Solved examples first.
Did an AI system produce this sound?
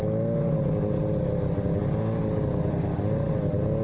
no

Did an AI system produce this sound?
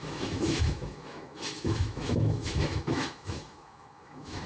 yes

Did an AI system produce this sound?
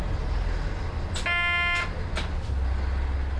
no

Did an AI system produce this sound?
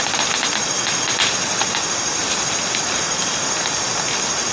no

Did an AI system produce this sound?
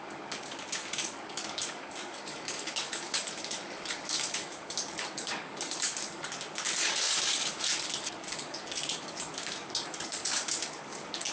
yes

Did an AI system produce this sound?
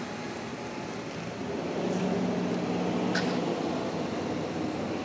no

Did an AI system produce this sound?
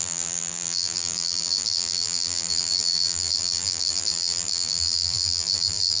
yes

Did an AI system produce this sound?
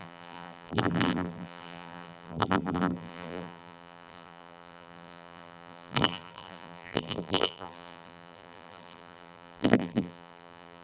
yes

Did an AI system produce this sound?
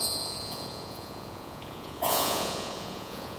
yes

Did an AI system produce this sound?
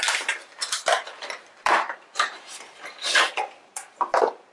yes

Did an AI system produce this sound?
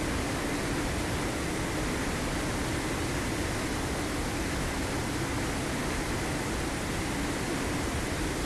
no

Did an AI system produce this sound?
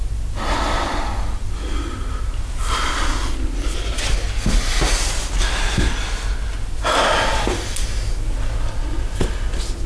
no